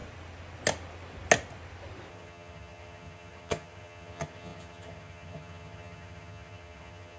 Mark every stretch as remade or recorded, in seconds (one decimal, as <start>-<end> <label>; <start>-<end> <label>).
0.0-2.1 recorded; 2.1-7.2 remade